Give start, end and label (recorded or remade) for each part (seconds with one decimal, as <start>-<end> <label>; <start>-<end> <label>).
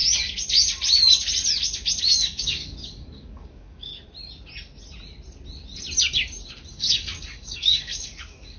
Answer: 0.0-2.0 recorded; 2.0-3.9 remade; 3.9-6.7 recorded; 6.7-8.6 remade